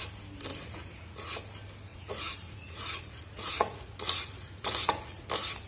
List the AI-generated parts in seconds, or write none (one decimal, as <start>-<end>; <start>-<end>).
0.5-1.3; 1.9-5.3